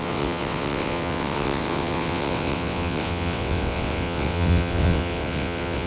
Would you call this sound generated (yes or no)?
yes